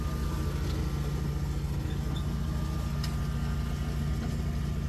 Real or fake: real